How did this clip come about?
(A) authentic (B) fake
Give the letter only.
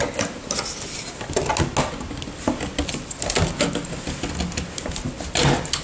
A